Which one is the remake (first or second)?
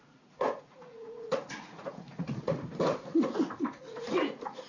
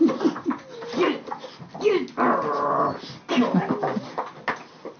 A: first